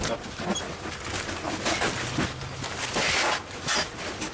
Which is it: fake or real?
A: real